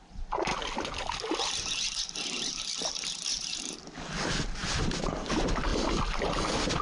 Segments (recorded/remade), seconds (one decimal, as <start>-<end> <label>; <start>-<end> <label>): 0.0-6.8 recorded

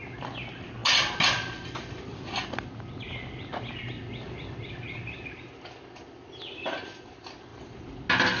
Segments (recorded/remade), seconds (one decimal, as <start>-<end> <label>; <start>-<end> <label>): 0.0-8.4 recorded

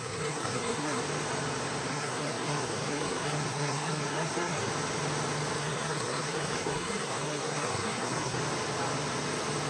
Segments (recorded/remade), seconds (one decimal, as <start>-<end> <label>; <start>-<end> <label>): 0.0-1.0 remade; 1.0-1.9 recorded; 1.9-4.7 remade; 4.7-5.6 recorded; 5.6-8.4 remade; 8.4-9.7 recorded

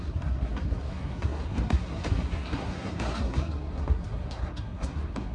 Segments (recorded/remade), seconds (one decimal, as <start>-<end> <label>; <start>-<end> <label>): 0.0-5.3 remade

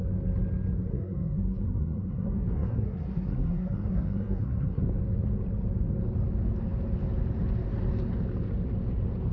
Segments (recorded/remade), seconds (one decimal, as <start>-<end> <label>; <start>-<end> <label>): 0.0-0.9 recorded; 0.9-4.8 remade; 4.8-9.3 recorded

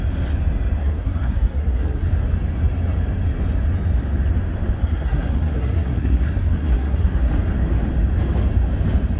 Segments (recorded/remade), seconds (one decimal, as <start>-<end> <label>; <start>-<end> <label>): 0.0-0.8 recorded; 0.8-2.1 remade; 2.1-4.8 recorded; 4.8-7.3 remade; 7.3-9.2 recorded

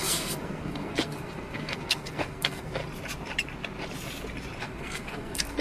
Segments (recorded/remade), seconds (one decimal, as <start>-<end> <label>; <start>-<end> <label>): 0.0-2.8 remade; 2.8-4.6 recorded; 4.6-5.6 remade